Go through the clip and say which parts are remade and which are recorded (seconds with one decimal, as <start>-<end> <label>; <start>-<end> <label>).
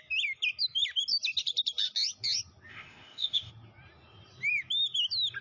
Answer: 0.0-2.7 recorded; 2.7-3.5 remade; 3.5-5.4 recorded